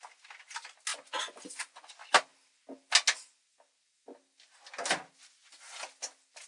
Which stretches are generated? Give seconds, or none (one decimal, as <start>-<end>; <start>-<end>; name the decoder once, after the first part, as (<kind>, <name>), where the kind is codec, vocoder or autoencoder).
0.9-1.9 (vocoder, Vocos)